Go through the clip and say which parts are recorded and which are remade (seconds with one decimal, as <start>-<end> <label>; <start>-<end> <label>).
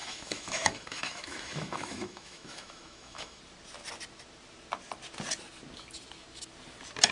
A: 0.0-3.4 remade; 3.4-7.1 recorded